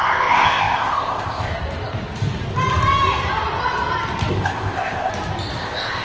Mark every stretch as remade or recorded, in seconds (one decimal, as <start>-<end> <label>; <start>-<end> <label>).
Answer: 0.0-1.5 remade; 1.5-4.3 recorded; 4.3-5.1 remade; 5.1-5.6 recorded; 5.6-6.0 remade